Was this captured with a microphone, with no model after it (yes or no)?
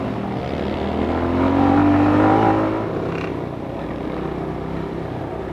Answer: yes